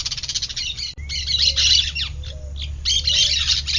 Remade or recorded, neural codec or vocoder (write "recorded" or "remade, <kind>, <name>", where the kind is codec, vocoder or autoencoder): recorded